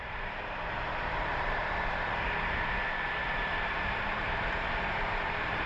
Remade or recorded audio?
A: remade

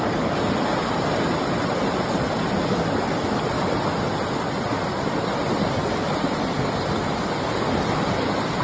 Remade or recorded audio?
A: recorded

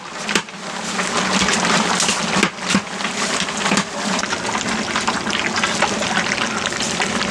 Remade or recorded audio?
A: recorded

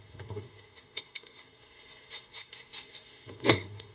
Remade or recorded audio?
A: remade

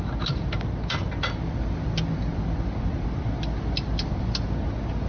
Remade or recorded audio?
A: recorded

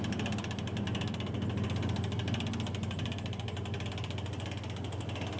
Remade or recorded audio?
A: recorded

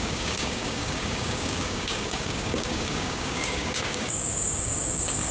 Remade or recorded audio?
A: remade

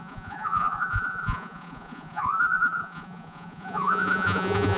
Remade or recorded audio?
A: remade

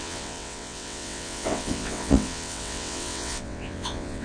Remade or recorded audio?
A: remade